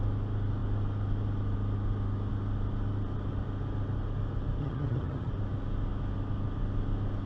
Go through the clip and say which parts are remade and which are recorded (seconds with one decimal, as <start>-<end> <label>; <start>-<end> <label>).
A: 0.0-4.6 recorded; 4.6-5.3 remade; 5.3-7.3 recorded

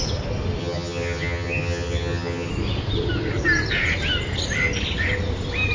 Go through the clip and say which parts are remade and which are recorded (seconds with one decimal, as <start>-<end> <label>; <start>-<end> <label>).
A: 0.0-0.6 recorded; 0.6-2.5 remade; 2.5-5.7 recorded

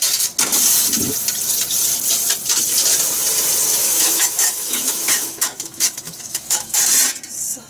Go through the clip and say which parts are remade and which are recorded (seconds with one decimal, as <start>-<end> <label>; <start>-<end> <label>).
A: 0.0-3.8 recorded; 3.8-6.8 remade; 6.8-7.7 recorded

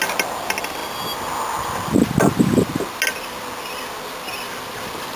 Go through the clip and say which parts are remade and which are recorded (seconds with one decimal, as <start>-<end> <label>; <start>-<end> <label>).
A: 0.0-5.2 recorded

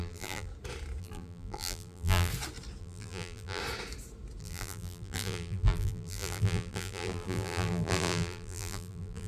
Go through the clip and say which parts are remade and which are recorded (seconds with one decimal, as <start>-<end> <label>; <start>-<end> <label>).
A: 0.0-0.5 remade; 0.5-1.0 recorded; 1.0-2.3 remade; 2.3-2.8 recorded; 2.8-3.6 remade; 3.6-4.4 recorded; 4.4-9.3 remade

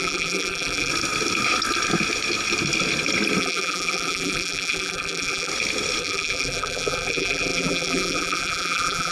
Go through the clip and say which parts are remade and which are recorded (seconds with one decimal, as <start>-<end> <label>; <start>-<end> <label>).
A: 0.0-0.9 remade; 0.9-3.4 recorded; 3.4-5.5 remade; 5.5-6.0 recorded; 6.0-9.1 remade